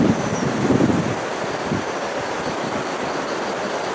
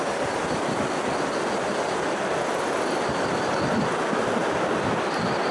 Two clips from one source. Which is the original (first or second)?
second